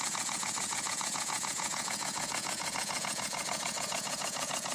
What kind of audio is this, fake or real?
fake